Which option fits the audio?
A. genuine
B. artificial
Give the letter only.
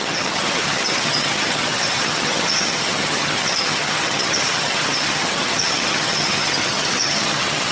B